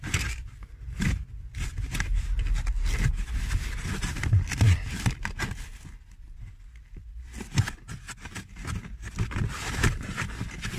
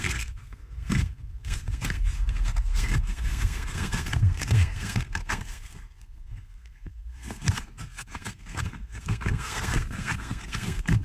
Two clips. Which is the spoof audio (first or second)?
second